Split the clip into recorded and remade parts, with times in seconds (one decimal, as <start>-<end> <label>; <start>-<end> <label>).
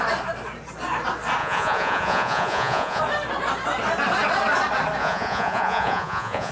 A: 0.0-1.4 recorded; 1.4-3.0 remade; 3.0-5.0 recorded; 5.0-6.5 remade